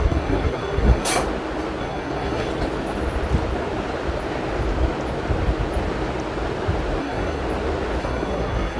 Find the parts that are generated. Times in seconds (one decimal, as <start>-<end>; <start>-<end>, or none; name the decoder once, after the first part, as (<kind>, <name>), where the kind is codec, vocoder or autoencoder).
0.0-1.1 (codec, SNAC); 1.8-2.5; 7.0-7.4; 8.0-8.8